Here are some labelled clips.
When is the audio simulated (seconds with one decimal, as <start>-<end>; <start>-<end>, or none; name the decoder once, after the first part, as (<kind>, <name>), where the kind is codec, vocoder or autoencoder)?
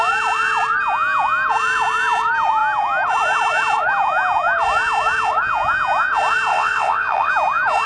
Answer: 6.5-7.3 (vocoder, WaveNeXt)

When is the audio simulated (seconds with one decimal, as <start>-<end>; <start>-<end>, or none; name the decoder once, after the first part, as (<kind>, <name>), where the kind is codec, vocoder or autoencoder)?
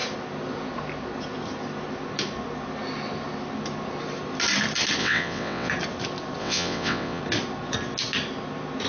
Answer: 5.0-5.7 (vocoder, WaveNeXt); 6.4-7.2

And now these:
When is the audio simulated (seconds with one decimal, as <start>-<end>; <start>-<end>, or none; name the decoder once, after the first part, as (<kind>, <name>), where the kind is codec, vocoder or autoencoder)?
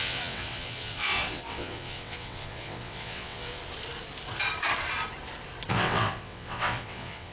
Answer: 0.0-3.6 (vocoder, WaveNeXt); 5.7-7.3